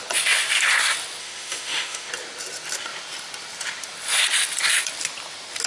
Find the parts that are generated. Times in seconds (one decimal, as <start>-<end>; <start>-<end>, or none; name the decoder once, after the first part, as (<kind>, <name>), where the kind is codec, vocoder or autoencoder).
1.2-2.1 (autoencoder, DAC-VAE)